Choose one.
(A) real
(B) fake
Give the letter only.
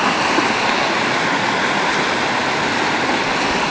A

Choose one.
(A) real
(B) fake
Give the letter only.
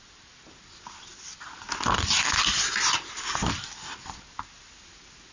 A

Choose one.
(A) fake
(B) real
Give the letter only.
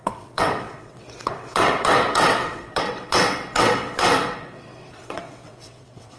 A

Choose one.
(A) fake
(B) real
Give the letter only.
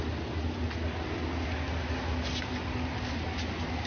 B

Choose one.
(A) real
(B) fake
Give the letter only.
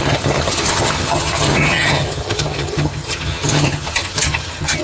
B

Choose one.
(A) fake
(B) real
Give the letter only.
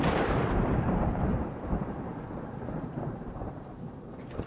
A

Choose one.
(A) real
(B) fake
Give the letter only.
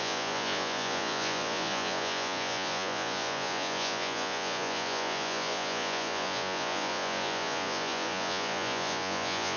B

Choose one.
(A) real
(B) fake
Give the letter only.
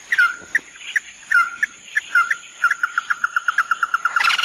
A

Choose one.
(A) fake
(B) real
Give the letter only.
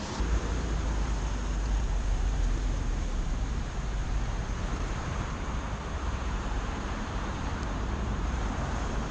A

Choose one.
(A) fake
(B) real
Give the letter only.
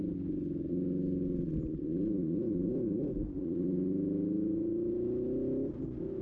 B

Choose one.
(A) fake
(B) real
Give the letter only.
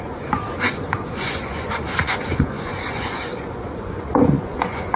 A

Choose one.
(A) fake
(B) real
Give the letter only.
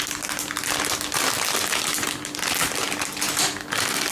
B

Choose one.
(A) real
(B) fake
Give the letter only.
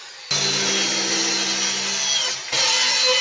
A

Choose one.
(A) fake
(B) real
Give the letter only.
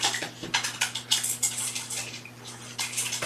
A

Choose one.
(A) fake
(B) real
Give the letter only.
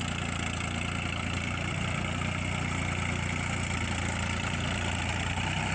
B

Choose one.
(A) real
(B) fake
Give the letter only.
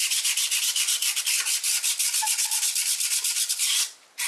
A